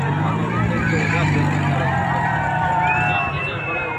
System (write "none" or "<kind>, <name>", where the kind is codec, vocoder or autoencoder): none